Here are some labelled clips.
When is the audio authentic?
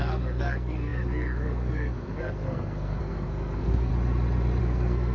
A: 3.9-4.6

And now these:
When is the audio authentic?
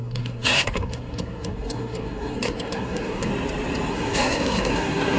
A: 3.3-3.9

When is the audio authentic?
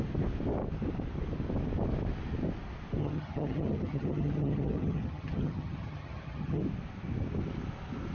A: 0.0-3.0; 6.6-8.1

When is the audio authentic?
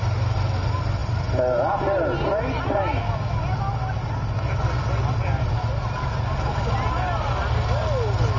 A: 0.0-8.4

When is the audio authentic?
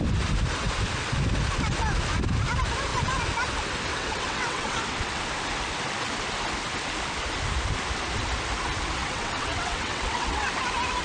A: 0.0-3.9; 5.2-9.0; 10.5-11.0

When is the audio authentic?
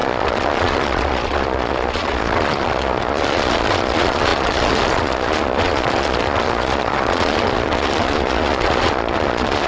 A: none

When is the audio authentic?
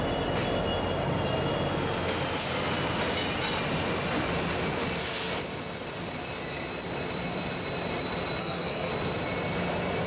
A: 0.0-8.4; 8.9-10.1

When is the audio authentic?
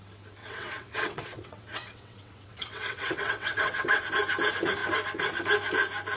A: 0.0-0.4; 4.1-6.2